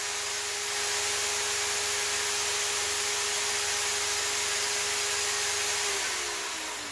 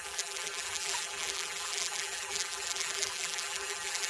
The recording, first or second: first